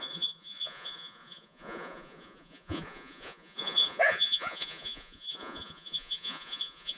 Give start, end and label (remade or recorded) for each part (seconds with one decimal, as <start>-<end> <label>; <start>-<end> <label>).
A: 0.0-7.0 remade